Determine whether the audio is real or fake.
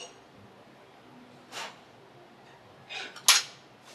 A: real